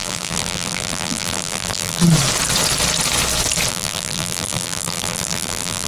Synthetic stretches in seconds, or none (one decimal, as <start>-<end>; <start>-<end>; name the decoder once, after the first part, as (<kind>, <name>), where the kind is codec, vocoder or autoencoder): 0.0-2.0 (vocoder, BigVGAN v2); 3.7-5.9